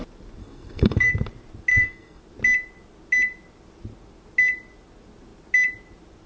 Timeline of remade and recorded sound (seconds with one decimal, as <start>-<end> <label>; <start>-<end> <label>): 0.0-0.4 recorded; 0.4-1.1 remade; 1.1-1.7 recorded; 1.7-2.2 remade; 2.2-6.3 recorded

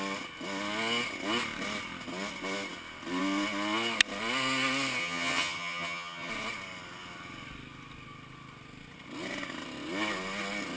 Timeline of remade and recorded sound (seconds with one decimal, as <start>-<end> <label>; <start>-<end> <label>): 0.0-5.0 recorded; 5.0-6.3 remade; 6.3-10.8 recorded

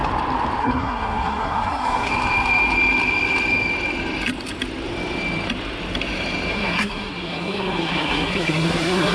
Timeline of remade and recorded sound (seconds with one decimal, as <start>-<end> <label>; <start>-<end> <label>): 0.0-0.6 recorded; 0.6-2.1 remade; 2.1-6.5 recorded; 6.5-9.1 remade

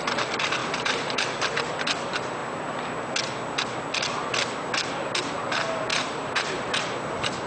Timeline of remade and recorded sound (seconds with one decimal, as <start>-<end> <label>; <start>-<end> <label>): 0.0-0.6 recorded; 0.6-1.2 remade; 1.2-5.9 recorded; 5.9-6.8 remade; 6.8-7.5 recorded

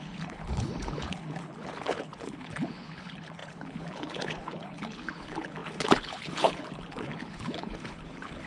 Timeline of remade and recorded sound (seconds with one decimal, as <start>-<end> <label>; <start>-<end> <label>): 0.0-8.5 remade

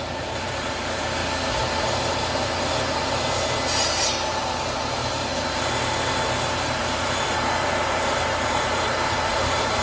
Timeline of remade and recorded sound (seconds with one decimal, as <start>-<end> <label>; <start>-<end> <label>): 0.0-1.2 remade; 1.2-1.8 recorded; 1.8-5.0 remade; 5.0-6.8 recorded; 6.8-9.8 remade

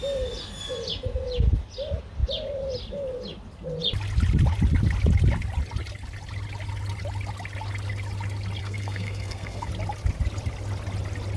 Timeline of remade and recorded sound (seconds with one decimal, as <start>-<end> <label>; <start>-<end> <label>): 0.0-8.6 recorded; 8.6-9.7 remade; 9.7-11.4 recorded

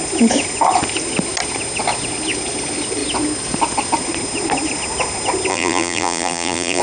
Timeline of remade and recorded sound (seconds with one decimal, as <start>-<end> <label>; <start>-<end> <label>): 0.0-5.5 recorded; 5.5-6.8 remade